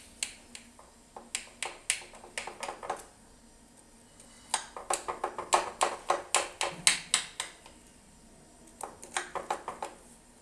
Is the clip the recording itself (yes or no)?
yes